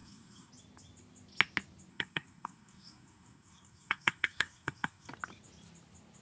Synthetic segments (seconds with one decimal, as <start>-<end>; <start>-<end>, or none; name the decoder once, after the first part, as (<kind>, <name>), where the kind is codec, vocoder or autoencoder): 0.0-0.5 (codec, SNAC); 1.9-5.1